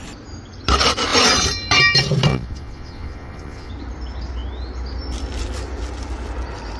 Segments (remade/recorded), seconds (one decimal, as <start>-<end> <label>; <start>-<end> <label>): 0.0-2.3 recorded; 2.3-3.7 remade; 3.7-6.8 recorded